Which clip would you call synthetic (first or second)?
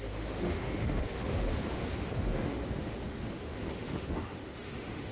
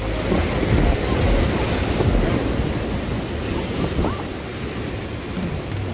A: first